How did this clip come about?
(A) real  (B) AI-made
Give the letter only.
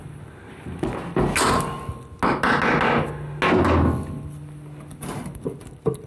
A